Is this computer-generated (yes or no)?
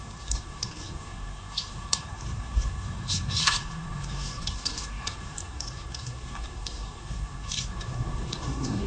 yes